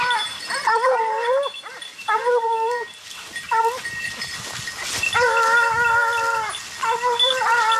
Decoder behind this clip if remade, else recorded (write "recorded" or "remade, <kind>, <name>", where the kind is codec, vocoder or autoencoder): recorded